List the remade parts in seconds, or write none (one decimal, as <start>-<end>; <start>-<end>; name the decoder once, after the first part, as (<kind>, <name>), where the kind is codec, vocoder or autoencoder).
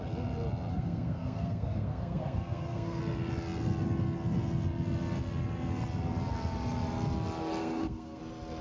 0.7-3.0 (codec, SNAC); 7.6-8.2